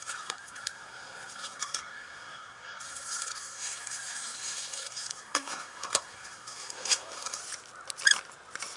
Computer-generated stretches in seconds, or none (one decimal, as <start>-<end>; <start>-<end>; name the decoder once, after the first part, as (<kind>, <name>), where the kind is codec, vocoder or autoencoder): 0.0-7.4 (codec, SNAC)